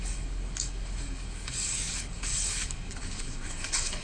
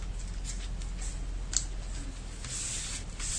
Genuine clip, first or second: second